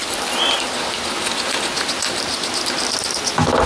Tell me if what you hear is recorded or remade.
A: recorded